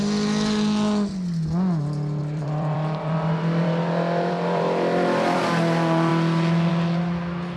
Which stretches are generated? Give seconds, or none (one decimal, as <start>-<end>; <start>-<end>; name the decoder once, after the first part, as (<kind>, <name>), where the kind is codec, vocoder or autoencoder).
2.2-5.4 (vocoder, BigVGAN v2)